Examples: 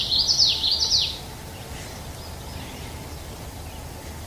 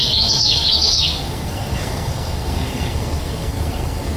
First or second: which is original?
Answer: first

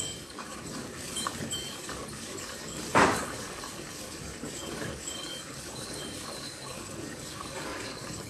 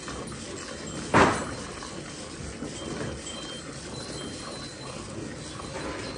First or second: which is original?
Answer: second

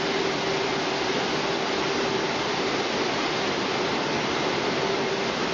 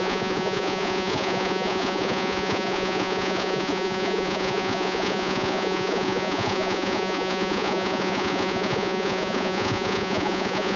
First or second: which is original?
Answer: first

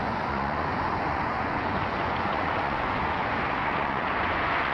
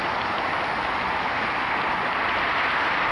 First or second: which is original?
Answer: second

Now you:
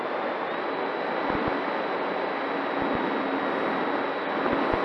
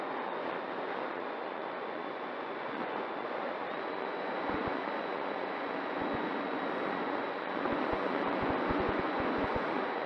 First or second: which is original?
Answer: first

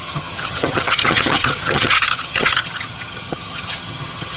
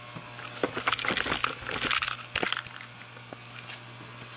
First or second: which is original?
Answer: second